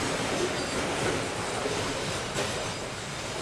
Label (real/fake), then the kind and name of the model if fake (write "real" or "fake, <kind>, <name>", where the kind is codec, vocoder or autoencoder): real